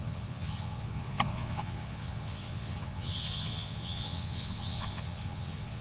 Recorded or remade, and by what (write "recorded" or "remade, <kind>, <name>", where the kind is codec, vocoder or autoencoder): remade, vocoder, WaveNeXt